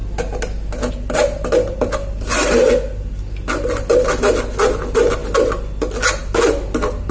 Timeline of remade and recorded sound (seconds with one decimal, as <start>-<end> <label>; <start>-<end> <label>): 0.0-7.1 recorded